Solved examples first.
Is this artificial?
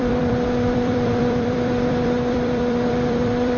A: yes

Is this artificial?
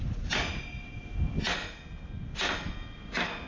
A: no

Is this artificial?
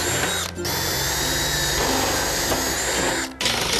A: no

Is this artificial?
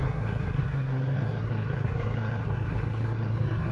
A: yes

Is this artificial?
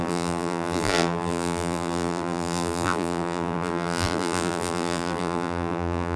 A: yes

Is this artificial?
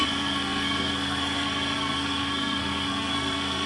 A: yes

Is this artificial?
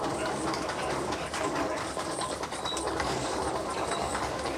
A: yes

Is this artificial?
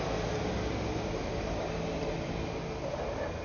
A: no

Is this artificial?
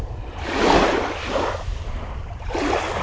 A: no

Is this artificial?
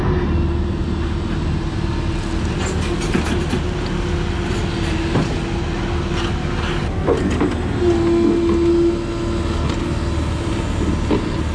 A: no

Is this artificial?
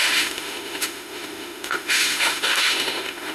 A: yes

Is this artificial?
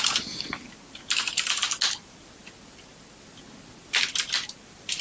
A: no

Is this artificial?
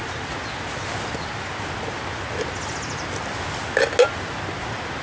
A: no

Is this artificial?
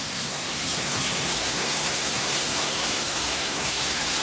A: yes